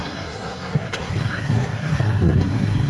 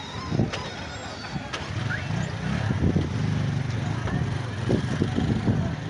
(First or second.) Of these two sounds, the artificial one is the first